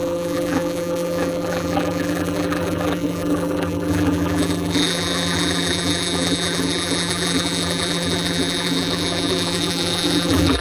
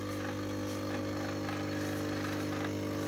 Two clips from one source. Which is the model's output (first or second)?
first